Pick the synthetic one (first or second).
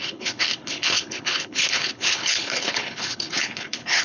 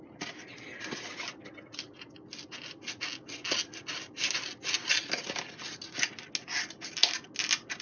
first